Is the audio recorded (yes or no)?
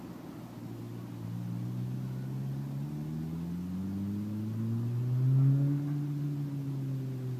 yes